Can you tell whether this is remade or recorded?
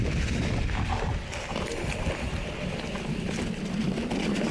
recorded